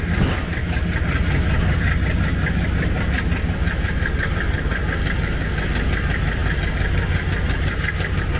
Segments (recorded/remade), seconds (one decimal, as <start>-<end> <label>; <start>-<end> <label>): 0.0-8.4 recorded

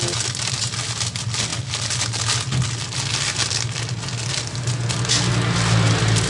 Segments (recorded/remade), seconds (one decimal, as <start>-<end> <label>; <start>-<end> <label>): 0.0-6.3 recorded